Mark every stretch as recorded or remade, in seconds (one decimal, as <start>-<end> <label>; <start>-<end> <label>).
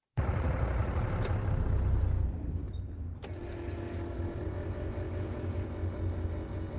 0.0-1.0 remade; 1.0-6.8 recorded